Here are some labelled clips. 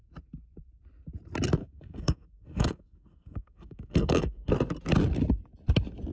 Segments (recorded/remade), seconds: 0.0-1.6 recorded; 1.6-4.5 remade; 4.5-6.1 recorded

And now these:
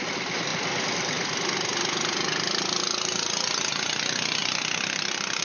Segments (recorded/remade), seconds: 0.0-5.4 recorded

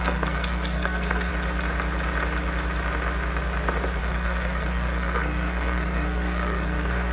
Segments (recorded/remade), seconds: 0.0-1.3 remade; 1.3-4.0 recorded; 4.0-7.1 remade

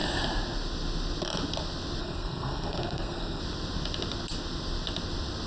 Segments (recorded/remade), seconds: 0.0-2.0 recorded; 2.0-3.4 remade; 3.4-5.5 recorded